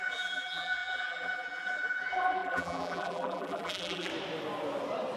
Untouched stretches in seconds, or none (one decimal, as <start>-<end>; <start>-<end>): 4.1-5.2